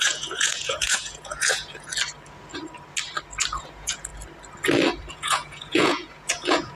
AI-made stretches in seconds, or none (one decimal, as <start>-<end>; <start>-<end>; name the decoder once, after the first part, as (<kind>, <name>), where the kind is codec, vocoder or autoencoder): 0.0-1.9 (vocoder, Vocos); 3.6-4.1; 5.1-6.7